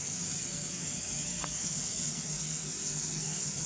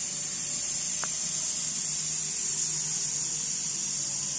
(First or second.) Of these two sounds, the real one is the second